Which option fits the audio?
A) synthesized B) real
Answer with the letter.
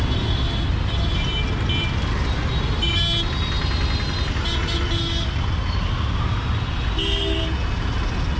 B